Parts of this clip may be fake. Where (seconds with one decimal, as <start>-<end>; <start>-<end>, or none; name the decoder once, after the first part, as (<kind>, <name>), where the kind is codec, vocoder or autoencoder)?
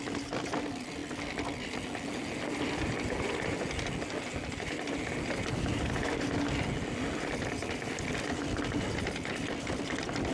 none